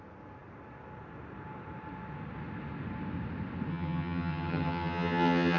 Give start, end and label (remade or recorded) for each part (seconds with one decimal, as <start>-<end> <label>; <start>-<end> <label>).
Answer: 0.0-3.7 recorded; 3.7-5.6 remade